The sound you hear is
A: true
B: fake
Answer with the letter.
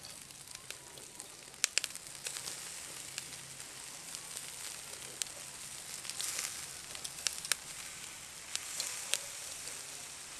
A